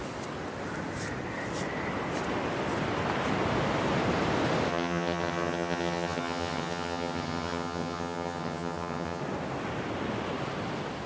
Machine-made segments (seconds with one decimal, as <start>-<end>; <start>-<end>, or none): 4.7-9.2